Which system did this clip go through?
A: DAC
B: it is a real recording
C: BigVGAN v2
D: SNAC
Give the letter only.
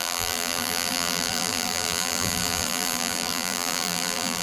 C